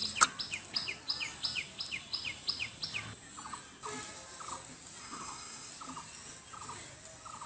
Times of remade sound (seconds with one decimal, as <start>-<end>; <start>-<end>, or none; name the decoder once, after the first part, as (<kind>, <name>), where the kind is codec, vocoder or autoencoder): 5.0-5.7 (codec, SNAC)